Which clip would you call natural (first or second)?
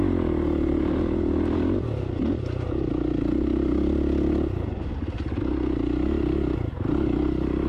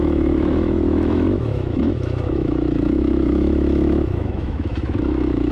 first